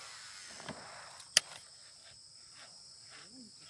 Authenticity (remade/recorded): recorded